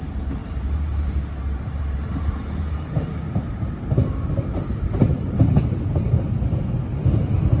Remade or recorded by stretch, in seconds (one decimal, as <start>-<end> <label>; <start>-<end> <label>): 0.0-0.4 recorded; 0.4-3.4 remade; 3.4-4.5 recorded; 4.5-6.6 remade; 6.6-7.6 recorded